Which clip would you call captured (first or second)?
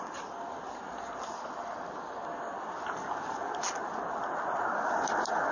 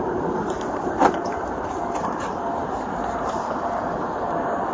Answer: first